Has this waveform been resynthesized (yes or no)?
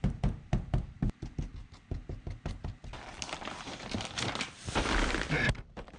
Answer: yes